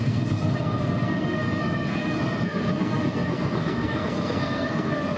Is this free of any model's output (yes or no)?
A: no